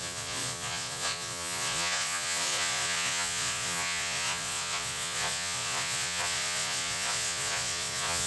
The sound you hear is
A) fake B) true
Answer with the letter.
A